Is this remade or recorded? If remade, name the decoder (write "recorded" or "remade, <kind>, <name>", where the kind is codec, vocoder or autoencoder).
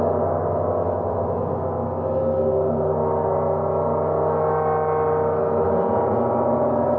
recorded